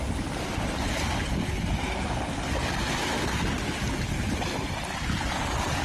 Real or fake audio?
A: real